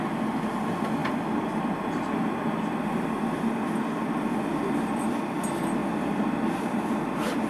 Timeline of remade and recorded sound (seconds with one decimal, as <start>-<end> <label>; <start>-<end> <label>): 0.0-1.0 recorded; 1.0-1.6 remade; 1.6-7.5 recorded